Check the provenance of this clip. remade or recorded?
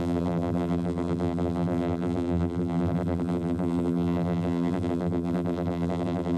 remade